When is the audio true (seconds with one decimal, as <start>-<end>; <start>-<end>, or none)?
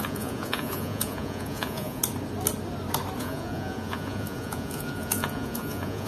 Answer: 2.0-3.2